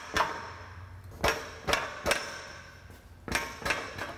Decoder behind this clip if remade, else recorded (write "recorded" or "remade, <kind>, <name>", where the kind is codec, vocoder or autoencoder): recorded